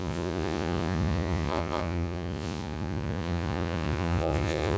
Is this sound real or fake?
fake